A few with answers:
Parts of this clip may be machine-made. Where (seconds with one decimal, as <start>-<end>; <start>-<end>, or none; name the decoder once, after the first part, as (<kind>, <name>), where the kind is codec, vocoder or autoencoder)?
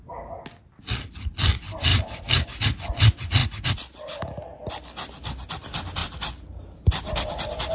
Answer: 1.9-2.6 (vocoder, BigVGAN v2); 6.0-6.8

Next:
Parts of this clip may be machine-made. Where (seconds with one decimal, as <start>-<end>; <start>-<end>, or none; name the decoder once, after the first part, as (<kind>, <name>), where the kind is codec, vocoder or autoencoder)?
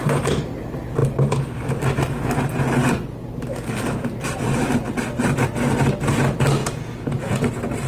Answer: 6.6-7.5 (vocoder, Vocos)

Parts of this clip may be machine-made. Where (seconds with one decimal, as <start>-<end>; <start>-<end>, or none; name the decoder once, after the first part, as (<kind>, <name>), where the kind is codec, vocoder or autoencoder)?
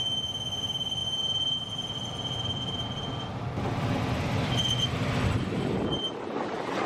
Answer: none